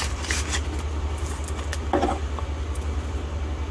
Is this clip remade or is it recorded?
recorded